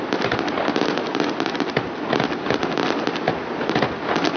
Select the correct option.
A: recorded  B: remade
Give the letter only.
A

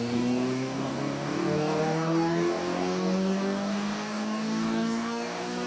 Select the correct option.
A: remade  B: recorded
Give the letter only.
A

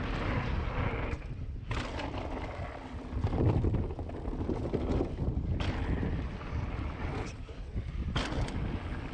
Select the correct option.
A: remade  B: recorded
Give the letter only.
B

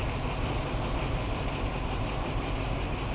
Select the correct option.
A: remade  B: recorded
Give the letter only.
B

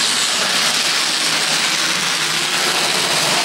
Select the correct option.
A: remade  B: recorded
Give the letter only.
B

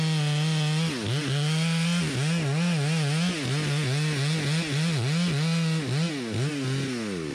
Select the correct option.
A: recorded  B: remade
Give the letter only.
A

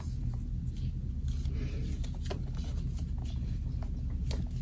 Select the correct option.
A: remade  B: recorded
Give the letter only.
B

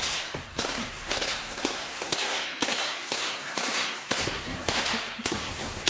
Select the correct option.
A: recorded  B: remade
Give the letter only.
B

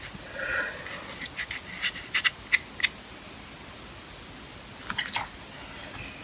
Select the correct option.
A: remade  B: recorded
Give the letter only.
B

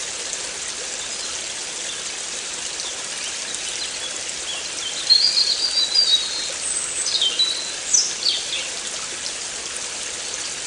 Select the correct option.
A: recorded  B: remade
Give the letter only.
A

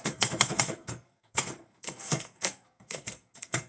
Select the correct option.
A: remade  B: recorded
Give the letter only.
A